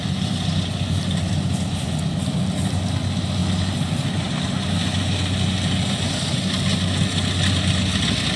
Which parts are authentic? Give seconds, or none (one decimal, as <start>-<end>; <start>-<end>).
0.0-8.4